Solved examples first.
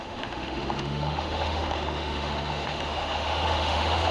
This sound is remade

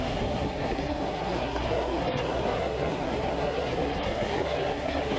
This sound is remade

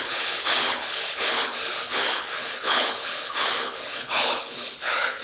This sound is remade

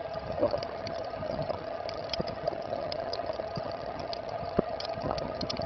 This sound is remade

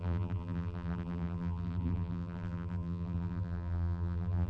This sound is remade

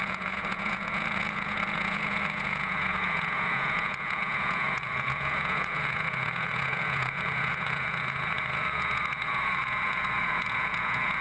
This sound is remade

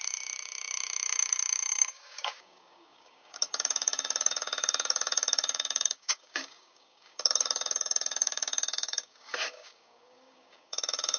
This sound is remade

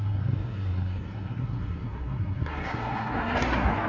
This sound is remade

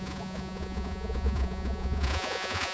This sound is remade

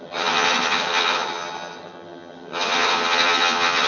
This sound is remade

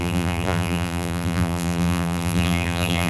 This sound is remade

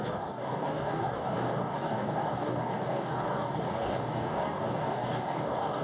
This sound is remade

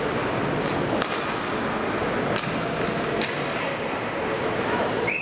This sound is recorded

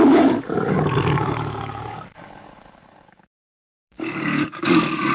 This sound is remade